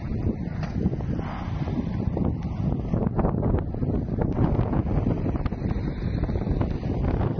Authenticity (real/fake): real